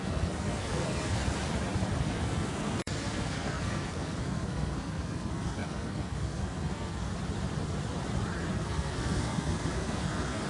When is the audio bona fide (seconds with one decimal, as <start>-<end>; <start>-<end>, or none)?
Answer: 1.2-2.0; 7.1-8.5